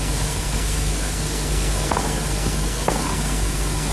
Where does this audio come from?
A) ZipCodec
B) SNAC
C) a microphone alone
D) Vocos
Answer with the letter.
B